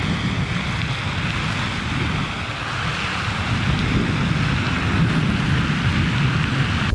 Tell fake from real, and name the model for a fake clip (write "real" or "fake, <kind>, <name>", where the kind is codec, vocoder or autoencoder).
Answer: real